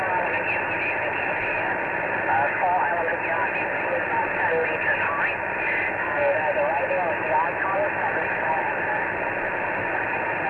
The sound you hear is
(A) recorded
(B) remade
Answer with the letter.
A